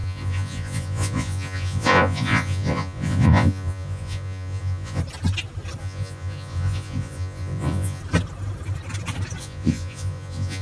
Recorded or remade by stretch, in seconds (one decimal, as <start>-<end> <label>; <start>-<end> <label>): 0.0-5.0 remade; 5.0-5.8 recorded; 5.8-8.0 remade; 8.0-9.4 recorded; 9.4-10.6 remade